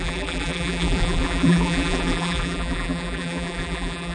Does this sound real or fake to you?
fake